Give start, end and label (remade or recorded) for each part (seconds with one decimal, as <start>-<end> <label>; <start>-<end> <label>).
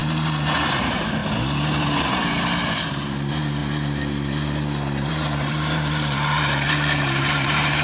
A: 0.0-0.7 recorded; 0.7-1.2 remade; 1.2-1.8 recorded; 1.8-3.6 remade; 3.6-5.1 recorded; 5.1-7.8 remade